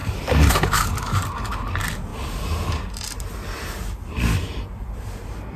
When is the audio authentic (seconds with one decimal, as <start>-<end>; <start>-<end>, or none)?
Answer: 1.6-5.6